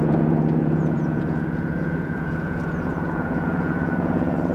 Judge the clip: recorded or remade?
remade